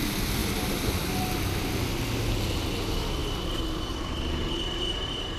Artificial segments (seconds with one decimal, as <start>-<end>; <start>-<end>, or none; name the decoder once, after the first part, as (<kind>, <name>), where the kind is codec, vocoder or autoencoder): none